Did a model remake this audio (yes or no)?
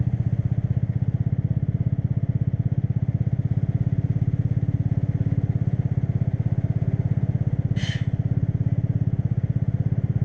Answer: no